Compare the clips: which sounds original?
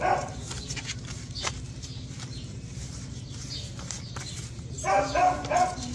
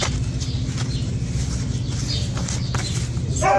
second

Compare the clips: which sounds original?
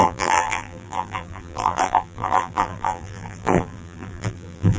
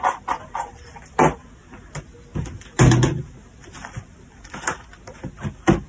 second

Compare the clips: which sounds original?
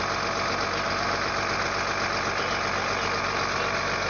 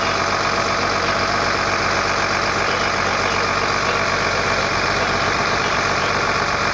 first